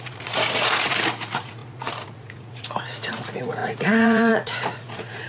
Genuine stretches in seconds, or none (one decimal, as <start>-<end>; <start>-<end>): none